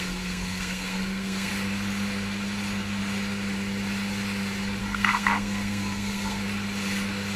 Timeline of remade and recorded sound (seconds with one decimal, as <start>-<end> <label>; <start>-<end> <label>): 0.0-1.5 remade; 1.5-4.8 recorded; 4.8-6.4 remade; 6.4-7.4 recorded